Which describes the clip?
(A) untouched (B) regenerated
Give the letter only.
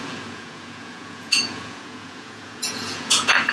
B